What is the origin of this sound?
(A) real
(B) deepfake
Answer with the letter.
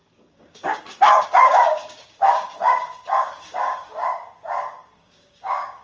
B